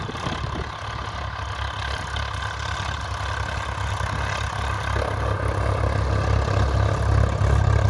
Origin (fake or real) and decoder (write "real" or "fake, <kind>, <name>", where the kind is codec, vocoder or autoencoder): real